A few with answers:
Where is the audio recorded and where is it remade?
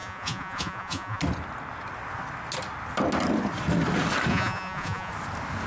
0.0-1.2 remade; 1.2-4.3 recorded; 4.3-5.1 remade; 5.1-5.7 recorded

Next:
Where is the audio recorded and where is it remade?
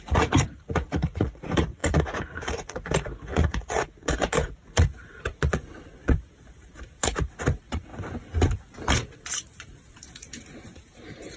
0.0-7.9 remade; 7.9-8.9 recorded; 8.9-11.4 remade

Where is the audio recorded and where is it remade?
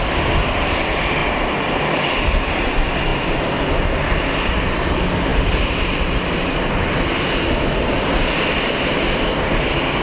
0.0-10.0 recorded